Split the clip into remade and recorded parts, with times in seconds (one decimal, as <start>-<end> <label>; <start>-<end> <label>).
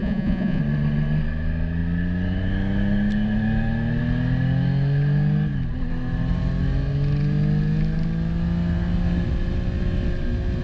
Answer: 0.0-0.6 remade; 0.6-10.6 recorded